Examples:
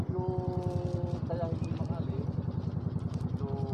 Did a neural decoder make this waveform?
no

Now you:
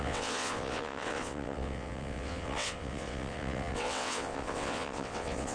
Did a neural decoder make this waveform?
yes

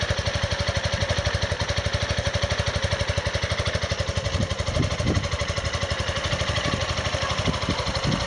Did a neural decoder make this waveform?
no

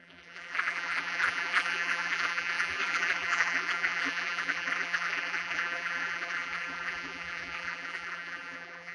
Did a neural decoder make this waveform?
yes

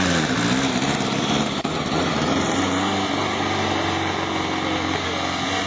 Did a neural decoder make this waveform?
no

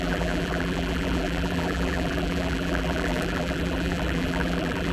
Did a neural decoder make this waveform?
yes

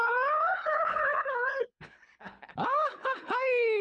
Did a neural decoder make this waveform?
yes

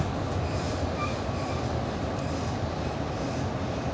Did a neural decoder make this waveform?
no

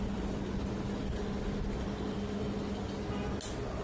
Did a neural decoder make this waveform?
no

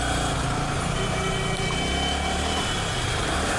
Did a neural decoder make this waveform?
no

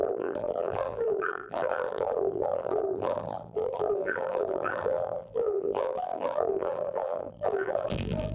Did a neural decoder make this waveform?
yes